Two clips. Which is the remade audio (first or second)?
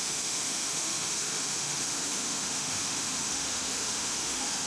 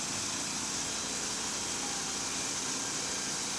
first